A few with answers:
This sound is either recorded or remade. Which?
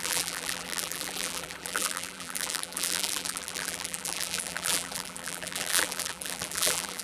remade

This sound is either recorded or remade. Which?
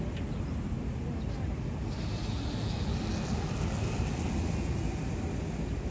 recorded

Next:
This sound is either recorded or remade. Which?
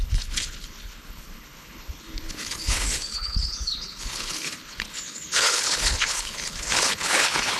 remade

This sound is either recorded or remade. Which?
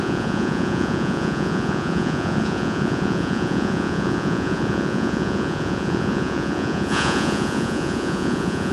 remade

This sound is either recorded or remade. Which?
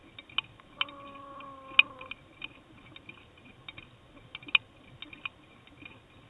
recorded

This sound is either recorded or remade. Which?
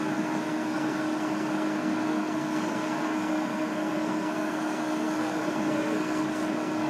remade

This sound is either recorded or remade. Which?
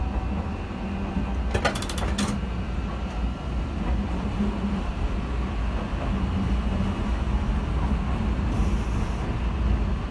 recorded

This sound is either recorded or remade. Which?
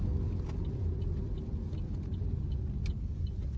recorded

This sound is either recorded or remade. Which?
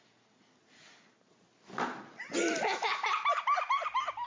recorded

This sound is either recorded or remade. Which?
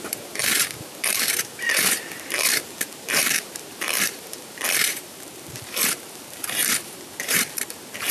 remade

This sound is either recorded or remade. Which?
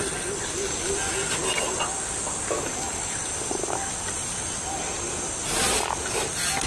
recorded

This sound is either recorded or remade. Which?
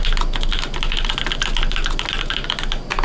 recorded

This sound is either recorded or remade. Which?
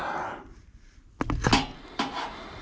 recorded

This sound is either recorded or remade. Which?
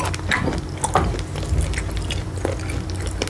recorded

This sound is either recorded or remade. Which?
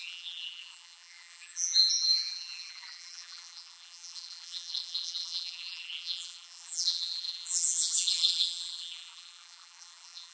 remade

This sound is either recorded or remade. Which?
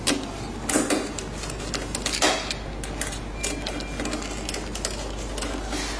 recorded